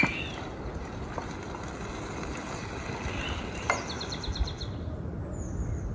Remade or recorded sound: recorded